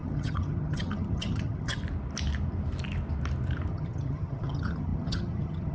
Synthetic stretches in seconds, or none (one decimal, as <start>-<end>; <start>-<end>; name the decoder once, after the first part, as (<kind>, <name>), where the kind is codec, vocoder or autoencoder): 0.0-1.8 (vocoder, HiFi-GAN); 3.7-5.7